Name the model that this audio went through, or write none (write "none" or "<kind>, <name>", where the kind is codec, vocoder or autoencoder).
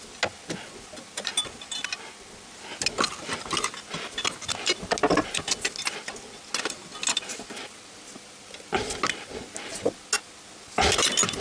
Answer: none